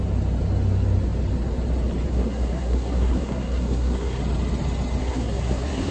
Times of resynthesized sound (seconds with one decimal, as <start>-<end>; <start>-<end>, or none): 2.1-4.2; 5.0-5.9

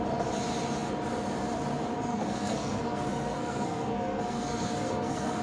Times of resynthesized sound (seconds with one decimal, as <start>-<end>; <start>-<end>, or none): 2.1-5.4

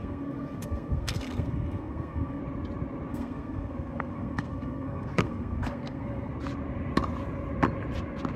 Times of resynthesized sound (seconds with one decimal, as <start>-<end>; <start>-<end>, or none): 0.0-2.4; 3.1-6.3